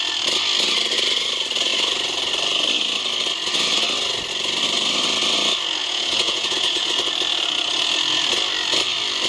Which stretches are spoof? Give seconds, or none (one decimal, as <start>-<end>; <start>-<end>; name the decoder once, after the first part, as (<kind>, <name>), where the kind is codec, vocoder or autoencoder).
5.8-6.9 (vocoder, Vocos)